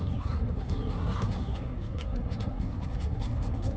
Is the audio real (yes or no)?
no